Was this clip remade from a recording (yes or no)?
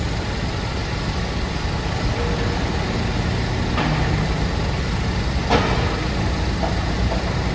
no